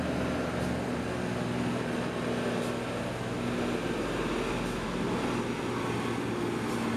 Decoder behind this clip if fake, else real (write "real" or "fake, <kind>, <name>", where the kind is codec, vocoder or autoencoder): real